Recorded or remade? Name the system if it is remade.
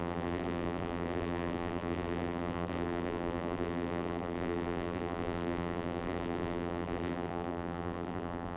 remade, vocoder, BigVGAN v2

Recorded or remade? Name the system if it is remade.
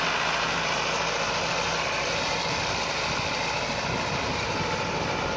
recorded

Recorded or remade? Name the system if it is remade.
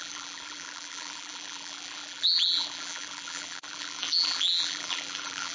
remade, vocoder, BigVGAN v2